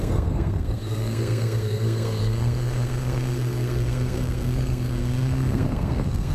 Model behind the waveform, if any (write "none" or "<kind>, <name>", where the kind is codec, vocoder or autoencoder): codec, SNAC